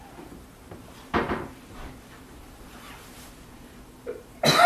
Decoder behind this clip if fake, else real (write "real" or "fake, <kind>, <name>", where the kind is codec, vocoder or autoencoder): fake, vocoder, BigVGAN v2